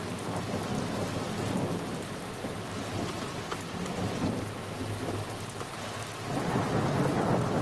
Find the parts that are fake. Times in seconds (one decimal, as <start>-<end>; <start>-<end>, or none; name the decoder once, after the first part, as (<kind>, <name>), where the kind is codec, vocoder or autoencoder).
none